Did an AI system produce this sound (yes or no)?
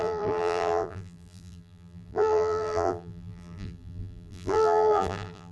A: yes